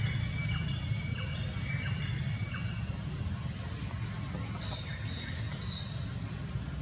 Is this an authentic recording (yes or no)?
yes